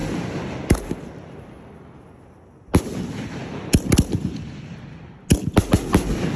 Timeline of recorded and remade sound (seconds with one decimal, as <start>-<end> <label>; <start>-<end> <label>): 0.0-6.4 recorded